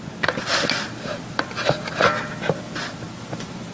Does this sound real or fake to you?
real